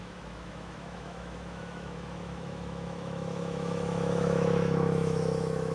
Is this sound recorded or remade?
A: remade